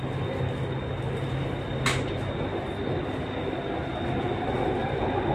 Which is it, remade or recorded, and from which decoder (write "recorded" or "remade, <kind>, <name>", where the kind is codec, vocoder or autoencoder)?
recorded